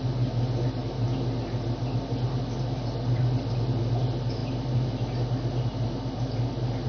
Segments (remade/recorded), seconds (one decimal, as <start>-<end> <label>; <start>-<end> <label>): 0.0-6.9 recorded